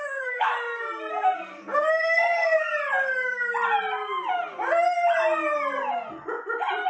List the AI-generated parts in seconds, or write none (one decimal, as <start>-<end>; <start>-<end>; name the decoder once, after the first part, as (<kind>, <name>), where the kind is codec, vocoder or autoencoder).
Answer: 0.0-0.5 (codec, SNAC); 1.1-2.7